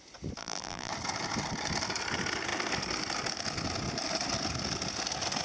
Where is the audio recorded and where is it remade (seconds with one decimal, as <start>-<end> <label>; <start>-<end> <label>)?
0.0-0.4 recorded; 0.4-0.9 remade; 0.9-5.4 recorded